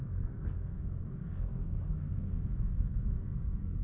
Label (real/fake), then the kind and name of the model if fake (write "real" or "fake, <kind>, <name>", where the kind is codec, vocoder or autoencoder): fake, codec, SNAC